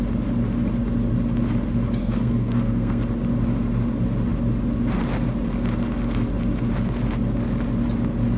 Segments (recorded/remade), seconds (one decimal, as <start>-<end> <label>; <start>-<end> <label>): 0.0-2.0 recorded; 2.0-3.0 remade; 3.0-8.4 recorded